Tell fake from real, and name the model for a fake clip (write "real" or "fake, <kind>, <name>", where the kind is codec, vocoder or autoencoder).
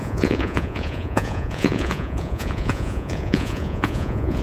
fake, vocoder, Vocos